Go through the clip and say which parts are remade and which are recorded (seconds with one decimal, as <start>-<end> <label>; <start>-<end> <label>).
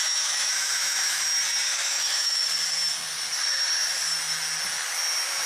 0.0-1.2 remade; 1.2-1.7 recorded; 1.7-2.5 remade; 2.5-5.5 recorded